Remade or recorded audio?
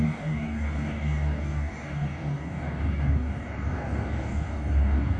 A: remade